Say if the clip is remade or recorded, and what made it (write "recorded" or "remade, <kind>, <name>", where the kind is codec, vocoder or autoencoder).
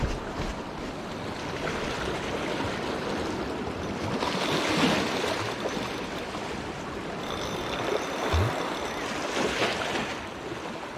recorded